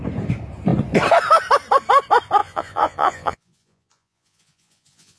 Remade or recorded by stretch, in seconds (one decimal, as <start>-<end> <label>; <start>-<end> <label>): 0.0-2.4 recorded; 2.4-5.2 remade

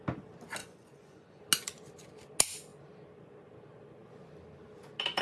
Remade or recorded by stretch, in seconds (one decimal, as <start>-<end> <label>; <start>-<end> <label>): 0.0-0.6 recorded; 0.6-1.4 remade; 1.4-5.2 recorded

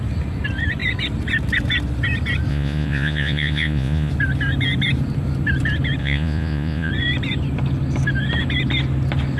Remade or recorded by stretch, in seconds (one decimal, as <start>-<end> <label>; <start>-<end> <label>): 0.0-2.5 recorded; 2.5-4.1 remade; 4.1-6.0 recorded; 6.0-6.9 remade; 6.9-9.4 recorded

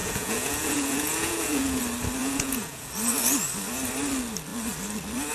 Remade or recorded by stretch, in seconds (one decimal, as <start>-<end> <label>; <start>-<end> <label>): 0.0-1.8 remade; 1.8-2.2 recorded; 2.2-2.9 remade; 2.9-5.3 recorded

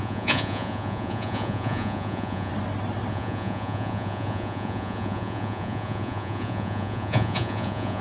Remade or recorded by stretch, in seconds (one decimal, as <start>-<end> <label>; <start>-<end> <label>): 0.0-2.5 remade; 2.5-3.1 recorded; 3.1-8.0 remade